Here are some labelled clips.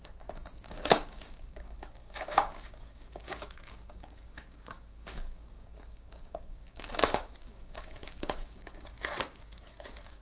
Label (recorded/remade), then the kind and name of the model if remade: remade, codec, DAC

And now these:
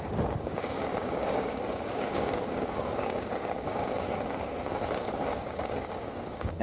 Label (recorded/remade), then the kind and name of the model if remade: remade, codec, DAC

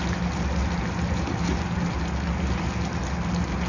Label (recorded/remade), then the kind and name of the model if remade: recorded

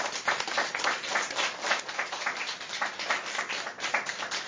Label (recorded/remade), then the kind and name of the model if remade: recorded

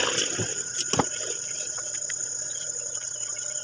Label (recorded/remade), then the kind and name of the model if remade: recorded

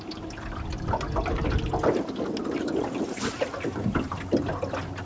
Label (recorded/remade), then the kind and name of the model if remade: recorded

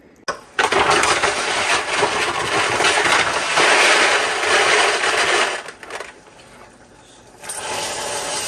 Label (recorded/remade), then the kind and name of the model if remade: recorded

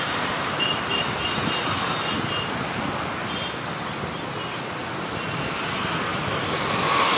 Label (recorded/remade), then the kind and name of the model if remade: recorded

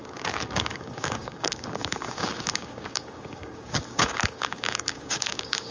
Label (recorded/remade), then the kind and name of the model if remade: remade, codec, DAC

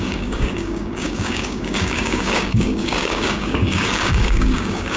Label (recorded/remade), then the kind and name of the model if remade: remade, codec, DAC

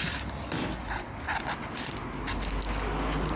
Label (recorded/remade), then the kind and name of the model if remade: recorded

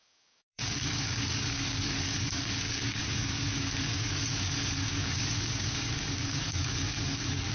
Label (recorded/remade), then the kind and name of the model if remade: remade, codec, DAC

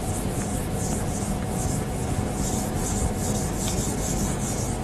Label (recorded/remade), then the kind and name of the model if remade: recorded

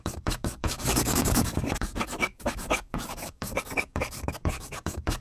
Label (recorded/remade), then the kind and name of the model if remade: remade, codec, DAC